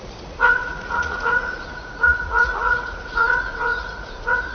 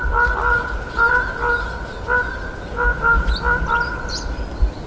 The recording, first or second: second